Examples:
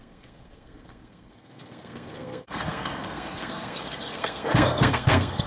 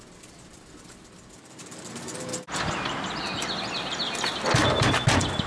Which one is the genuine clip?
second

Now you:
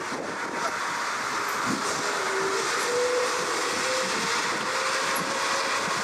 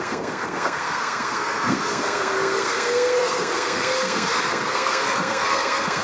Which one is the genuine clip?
first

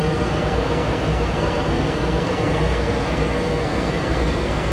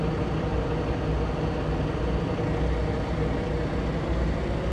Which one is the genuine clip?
second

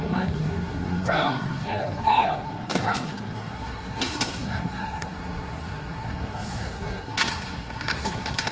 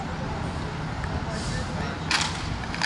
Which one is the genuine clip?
second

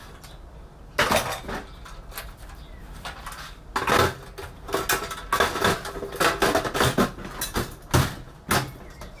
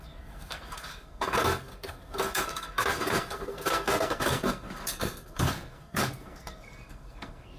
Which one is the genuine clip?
first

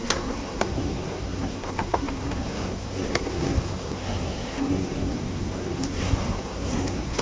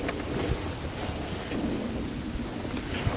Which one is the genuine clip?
second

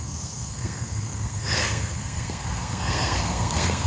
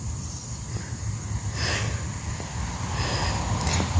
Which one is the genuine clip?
second